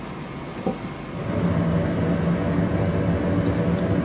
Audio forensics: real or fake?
real